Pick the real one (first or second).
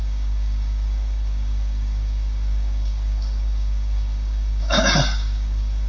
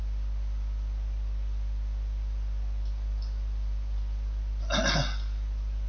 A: second